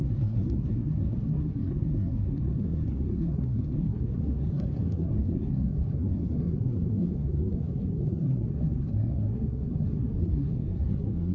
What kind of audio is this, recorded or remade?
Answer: remade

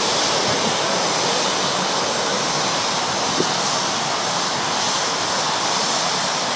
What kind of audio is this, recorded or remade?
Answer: recorded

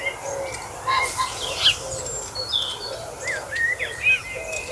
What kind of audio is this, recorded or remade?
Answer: recorded